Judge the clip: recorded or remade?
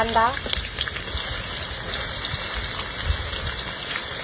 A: recorded